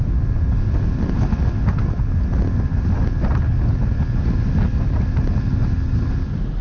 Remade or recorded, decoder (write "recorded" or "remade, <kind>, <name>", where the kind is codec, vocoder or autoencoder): recorded